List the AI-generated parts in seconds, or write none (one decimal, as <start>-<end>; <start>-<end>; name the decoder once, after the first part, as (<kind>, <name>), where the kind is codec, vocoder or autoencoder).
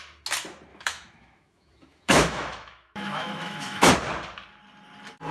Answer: 0.7-3.9 (autoencoder, DAC-VAE)